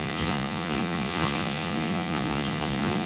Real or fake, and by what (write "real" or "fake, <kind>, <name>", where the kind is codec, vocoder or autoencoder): fake, vocoder, Vocos